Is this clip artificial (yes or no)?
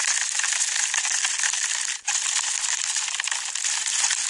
no